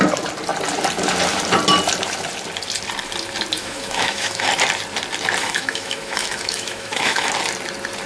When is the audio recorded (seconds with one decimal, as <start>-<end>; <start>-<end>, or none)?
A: 0.0-3.6; 4.5-5.4; 7.3-8.1